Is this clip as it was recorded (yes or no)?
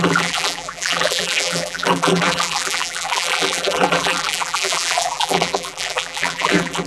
no